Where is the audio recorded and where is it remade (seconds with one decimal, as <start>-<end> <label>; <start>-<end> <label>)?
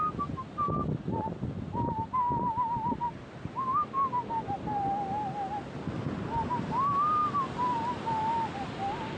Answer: 0.0-9.2 recorded